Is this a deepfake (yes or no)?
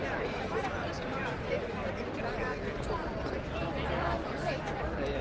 yes